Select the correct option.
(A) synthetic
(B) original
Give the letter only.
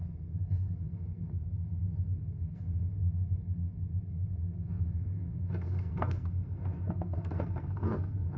A